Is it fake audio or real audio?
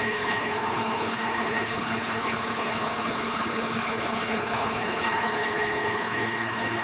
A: fake